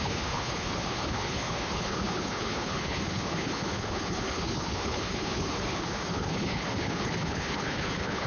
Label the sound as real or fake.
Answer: fake